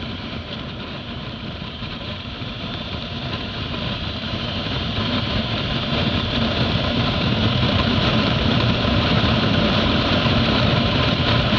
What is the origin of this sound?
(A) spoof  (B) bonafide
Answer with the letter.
A